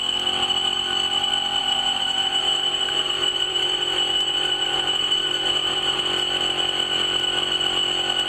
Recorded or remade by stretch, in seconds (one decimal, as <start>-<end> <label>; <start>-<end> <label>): 0.0-1.6 recorded; 1.6-6.0 remade; 6.0-8.3 recorded